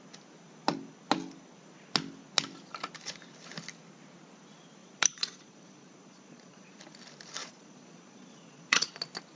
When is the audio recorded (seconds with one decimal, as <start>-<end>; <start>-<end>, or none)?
0.0-4.8; 6.8-7.4; 8.9-9.4